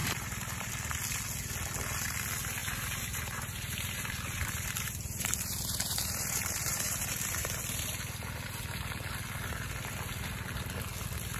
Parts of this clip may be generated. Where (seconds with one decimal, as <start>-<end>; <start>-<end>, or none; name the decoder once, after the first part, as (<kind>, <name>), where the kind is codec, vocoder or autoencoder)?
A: 0.0-0.7 (vocoder, BigVGAN v2); 2.6-7.6